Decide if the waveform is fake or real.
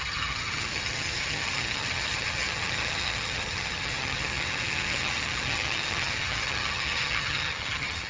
fake